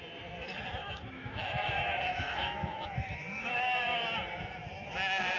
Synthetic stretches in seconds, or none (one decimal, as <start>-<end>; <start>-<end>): 0.8-4.0